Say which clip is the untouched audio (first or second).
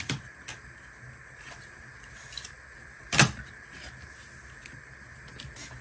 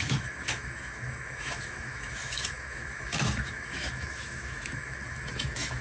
first